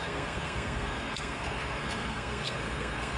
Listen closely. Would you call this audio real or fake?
fake